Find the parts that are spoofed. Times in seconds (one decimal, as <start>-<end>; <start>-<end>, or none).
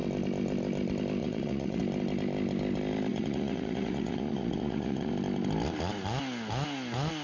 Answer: 1.2-1.8; 3.1-5.1